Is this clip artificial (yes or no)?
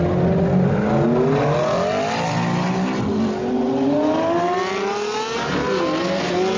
no